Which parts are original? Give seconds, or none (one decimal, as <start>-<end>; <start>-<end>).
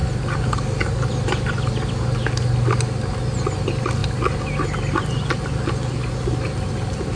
0.0-7.2